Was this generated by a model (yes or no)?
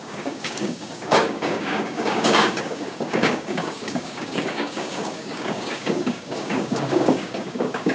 yes